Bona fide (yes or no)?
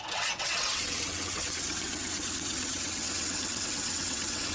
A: no